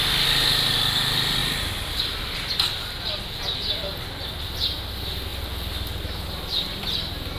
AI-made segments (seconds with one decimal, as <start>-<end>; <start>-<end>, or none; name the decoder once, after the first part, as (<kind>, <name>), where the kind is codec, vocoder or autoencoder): none